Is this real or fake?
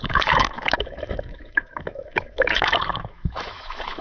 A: fake